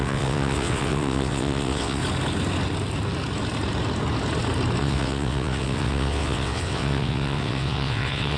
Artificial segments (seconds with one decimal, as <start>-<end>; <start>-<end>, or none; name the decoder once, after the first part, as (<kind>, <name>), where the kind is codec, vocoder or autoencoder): 0.0-2.0 (vocoder, WaveNeXt); 4.8-8.4